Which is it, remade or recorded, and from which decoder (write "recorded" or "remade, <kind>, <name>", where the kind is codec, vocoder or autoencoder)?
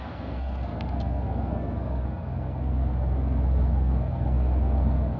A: remade, codec, SNAC